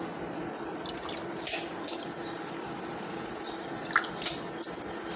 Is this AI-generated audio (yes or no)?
no